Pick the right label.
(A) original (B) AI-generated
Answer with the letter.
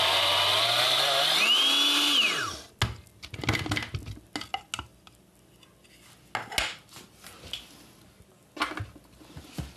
A